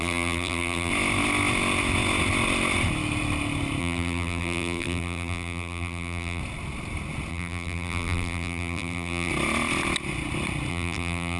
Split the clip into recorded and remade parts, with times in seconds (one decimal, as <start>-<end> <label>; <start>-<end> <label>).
0.0-0.9 remade; 0.9-3.8 recorded; 3.8-6.4 remade; 6.4-7.3 recorded; 7.3-9.3 remade; 9.3-10.7 recorded; 10.7-11.4 remade